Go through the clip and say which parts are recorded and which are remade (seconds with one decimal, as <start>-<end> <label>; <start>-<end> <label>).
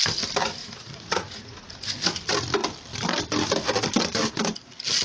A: 0.0-0.6 recorded; 0.6-1.8 remade; 1.8-5.0 recorded